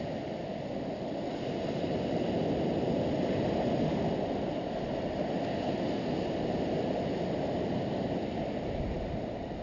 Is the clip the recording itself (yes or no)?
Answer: yes